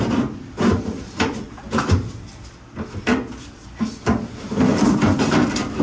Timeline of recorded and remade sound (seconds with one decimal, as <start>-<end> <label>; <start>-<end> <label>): 0.0-5.8 recorded